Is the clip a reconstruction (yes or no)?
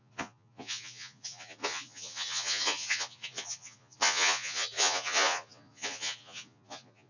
yes